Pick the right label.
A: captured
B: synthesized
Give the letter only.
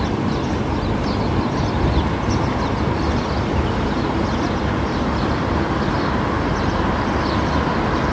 A